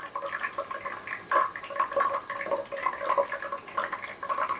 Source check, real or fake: real